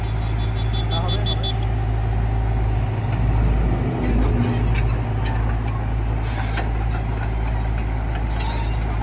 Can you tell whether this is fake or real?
real